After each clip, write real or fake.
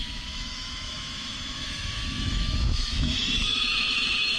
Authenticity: fake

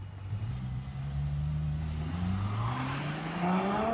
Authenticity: real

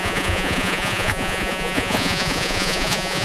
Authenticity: fake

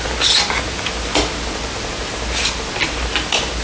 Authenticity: real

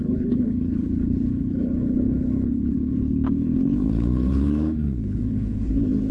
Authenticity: fake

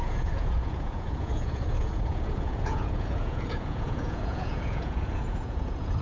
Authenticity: fake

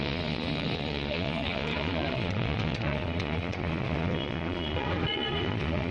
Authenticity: fake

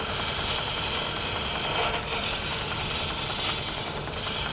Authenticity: real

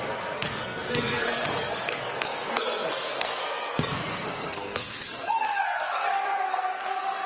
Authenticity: fake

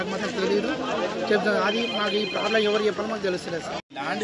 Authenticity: real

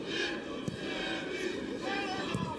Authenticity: real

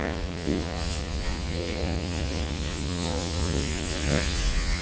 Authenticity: fake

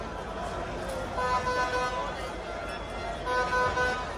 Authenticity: real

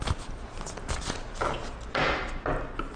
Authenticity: real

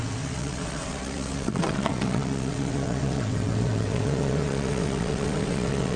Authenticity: fake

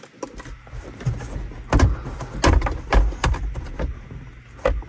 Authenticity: real